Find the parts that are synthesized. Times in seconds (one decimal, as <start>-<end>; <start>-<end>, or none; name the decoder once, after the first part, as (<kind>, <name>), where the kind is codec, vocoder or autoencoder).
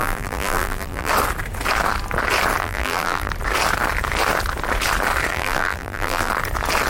0.0-1.1 (vocoder, BigVGAN v2); 2.6-3.3; 5.3-6.3